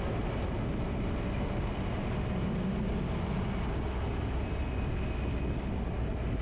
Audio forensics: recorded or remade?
recorded